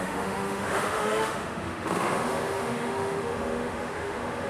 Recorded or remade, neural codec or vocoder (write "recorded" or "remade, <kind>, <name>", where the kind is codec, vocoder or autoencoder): remade, autoencoder, DAC-VAE